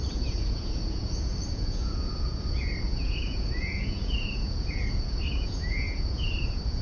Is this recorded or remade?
remade